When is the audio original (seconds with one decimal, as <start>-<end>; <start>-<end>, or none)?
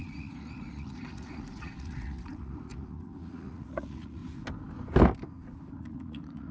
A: 4.2-5.7